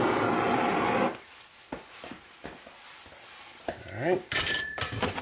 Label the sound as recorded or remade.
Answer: recorded